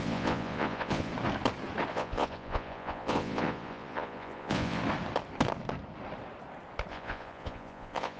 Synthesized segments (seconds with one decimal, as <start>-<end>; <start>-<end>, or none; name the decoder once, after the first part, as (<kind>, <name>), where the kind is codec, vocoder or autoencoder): 0.0-1.1 (vocoder, Vocos); 1.9-4.8; 6.9-8.2